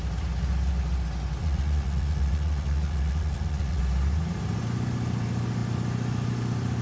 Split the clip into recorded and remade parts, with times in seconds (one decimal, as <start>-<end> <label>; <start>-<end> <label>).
0.0-1.4 recorded; 1.4-3.8 remade; 3.8-6.8 recorded